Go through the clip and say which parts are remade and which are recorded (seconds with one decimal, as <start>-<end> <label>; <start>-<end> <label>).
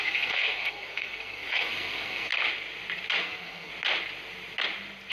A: 0.0-2.3 remade; 2.3-3.2 recorded; 3.2-3.7 remade; 3.7-5.1 recorded